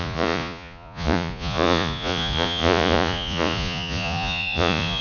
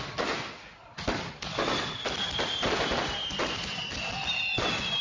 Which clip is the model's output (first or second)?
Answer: first